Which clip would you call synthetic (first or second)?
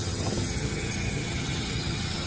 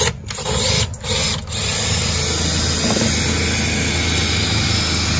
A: first